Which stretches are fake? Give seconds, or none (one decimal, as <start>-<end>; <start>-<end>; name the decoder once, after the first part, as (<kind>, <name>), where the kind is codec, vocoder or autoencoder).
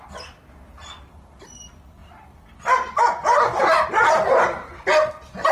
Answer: none